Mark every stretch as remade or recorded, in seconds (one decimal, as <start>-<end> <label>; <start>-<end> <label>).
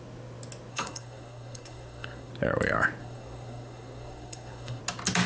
0.0-0.7 recorded; 0.7-2.3 remade; 2.3-3.0 recorded; 3.0-4.8 remade; 4.8-5.3 recorded